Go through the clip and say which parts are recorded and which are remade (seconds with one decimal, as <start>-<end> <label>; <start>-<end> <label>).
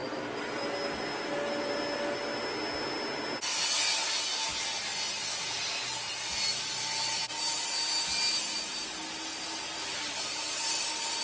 0.0-11.2 recorded